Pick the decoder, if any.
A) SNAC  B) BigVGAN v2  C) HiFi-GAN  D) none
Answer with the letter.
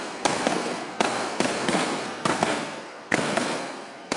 A